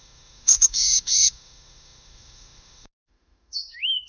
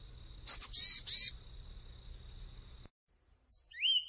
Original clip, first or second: second